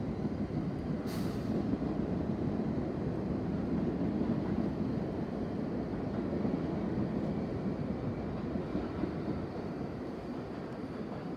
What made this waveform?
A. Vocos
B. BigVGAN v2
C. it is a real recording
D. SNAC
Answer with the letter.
C